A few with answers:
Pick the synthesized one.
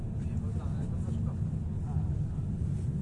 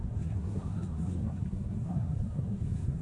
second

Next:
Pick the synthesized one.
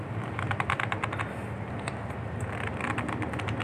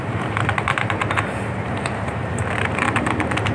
second